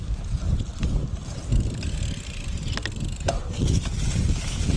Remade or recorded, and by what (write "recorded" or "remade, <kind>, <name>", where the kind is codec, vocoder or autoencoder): recorded